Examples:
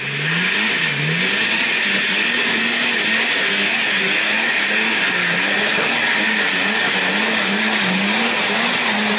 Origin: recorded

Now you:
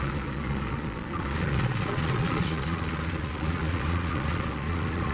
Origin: remade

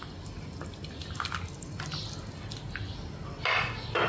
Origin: recorded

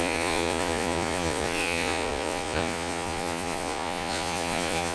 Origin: remade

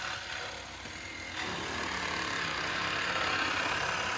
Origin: recorded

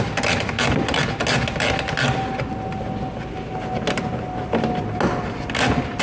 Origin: recorded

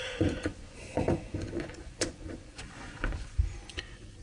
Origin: remade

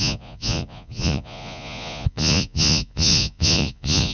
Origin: remade